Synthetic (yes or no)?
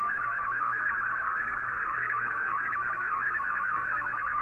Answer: yes